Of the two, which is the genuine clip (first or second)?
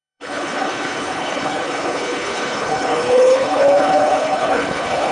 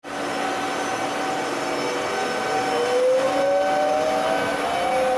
second